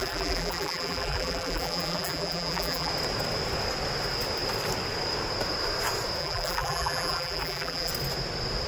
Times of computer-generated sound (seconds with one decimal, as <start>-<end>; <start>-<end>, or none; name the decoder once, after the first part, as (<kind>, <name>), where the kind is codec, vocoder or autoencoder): 0.0-2.9 (vocoder, BigVGAN v2); 6.2-7.9